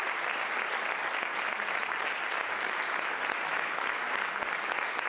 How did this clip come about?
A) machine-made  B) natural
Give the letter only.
B